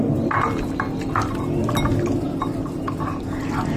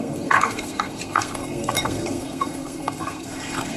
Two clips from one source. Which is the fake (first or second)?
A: second